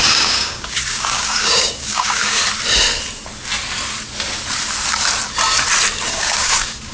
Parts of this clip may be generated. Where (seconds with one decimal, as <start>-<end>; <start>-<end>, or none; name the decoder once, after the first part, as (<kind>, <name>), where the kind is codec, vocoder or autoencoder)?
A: 0.0-2.4 (codec, DAC); 6.1-6.9